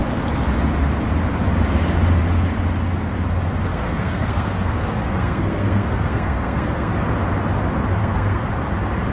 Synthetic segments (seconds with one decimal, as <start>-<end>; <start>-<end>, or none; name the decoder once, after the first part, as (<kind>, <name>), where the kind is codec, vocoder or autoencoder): 3.7-6.9 (codec, SNAC); 8.0-8.5